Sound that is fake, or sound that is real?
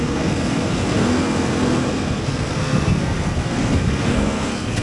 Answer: fake